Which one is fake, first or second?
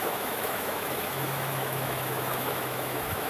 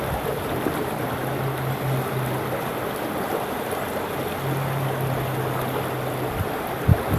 first